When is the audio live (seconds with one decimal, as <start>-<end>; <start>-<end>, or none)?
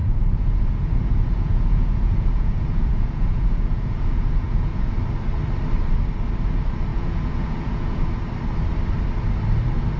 4.9-6.9; 8.0-10.0